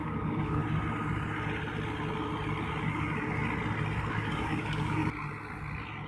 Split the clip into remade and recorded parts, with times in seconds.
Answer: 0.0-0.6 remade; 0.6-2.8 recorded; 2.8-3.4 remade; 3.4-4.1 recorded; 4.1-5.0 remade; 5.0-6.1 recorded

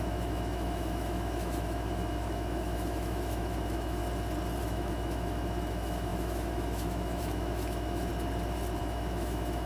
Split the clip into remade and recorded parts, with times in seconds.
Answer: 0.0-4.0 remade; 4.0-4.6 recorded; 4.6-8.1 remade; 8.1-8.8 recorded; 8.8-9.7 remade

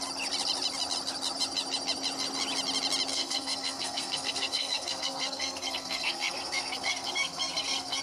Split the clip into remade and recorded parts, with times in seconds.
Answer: 0.0-3.1 recorded; 3.1-8.0 remade